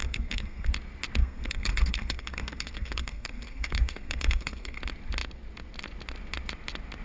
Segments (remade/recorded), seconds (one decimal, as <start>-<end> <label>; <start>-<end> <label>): 0.0-0.7 remade; 0.7-1.2 recorded; 1.2-4.8 remade; 4.8-7.0 recorded